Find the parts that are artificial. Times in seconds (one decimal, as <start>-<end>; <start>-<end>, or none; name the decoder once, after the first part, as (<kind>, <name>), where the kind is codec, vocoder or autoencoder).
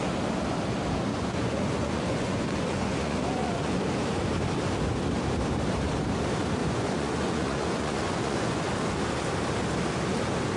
1.1-3.8 (vocoder, Vocos); 6.6-8.7